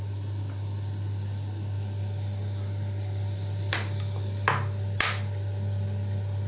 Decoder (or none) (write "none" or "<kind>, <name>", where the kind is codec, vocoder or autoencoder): none